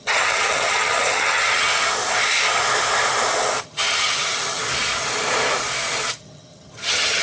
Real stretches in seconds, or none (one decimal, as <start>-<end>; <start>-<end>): 1.7-3.6; 4.6-6.1